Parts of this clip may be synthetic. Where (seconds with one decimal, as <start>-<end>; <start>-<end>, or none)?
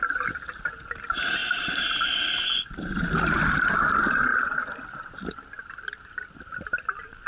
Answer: 1.4-3.0; 4.3-7.3